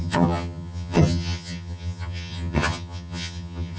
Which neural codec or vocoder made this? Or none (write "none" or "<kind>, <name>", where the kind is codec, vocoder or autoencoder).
vocoder, HiFi-GAN